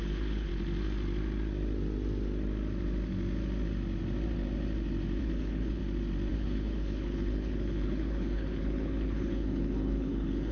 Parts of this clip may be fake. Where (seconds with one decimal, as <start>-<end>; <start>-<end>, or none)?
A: 0.0-0.5; 5.2-5.8; 6.3-10.5